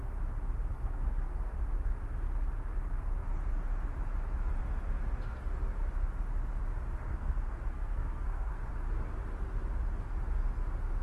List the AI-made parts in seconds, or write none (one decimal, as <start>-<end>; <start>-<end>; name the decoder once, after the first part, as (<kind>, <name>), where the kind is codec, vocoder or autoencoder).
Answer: 0.7-1.5 (codec, SNAC); 7.1-8.7